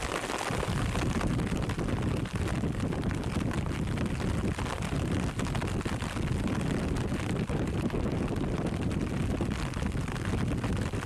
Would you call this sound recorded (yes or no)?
yes